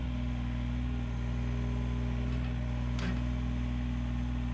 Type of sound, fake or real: real